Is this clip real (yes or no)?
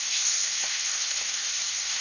no